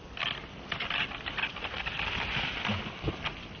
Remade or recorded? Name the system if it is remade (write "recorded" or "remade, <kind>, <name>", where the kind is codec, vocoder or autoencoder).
recorded